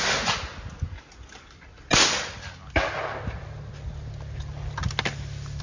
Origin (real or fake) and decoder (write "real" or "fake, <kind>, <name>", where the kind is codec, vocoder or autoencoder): real